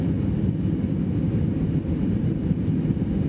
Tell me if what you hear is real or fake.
real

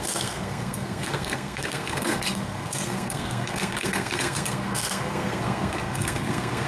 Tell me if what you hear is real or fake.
fake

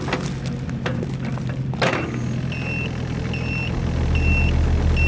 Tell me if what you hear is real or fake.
real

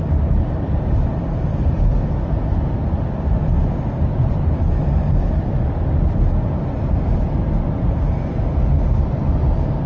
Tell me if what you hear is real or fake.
real